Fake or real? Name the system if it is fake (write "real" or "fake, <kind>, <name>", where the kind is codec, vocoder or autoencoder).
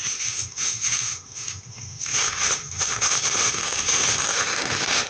fake, autoencoder, DAC-VAE